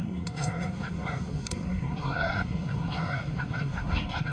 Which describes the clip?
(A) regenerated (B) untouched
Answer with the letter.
A